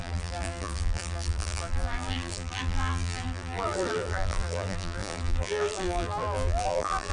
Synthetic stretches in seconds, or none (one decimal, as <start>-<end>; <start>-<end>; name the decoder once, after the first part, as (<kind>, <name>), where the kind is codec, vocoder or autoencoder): 0.0-7.1 (vocoder, BigVGAN v2)